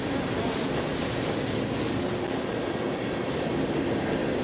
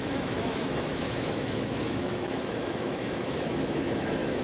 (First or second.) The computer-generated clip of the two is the second